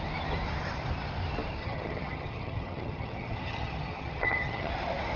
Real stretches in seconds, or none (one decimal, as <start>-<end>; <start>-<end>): 0.0-1.6; 4.7-5.2